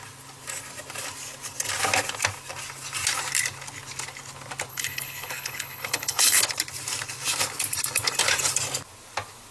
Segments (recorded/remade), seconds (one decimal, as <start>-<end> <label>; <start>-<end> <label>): 0.0-4.7 recorded; 4.7-6.4 remade; 6.4-9.5 recorded